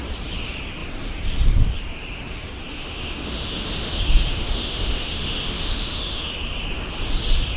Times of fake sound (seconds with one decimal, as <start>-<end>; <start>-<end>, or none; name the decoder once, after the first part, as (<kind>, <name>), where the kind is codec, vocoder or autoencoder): 2.7-6.3 (autoencoder, DAC-VAE)